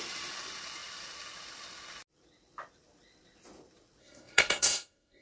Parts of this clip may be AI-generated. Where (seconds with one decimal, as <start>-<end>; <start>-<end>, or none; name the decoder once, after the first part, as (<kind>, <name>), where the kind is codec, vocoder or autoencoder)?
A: 4.0-5.2 (codec, SNAC)